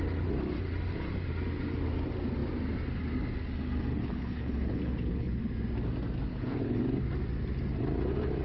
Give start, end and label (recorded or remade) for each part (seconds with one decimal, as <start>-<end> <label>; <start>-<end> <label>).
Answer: 0.0-3.9 recorded; 3.9-5.4 remade; 5.4-6.3 recorded; 6.3-6.8 remade; 6.8-8.4 recorded